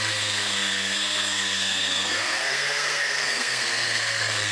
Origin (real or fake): fake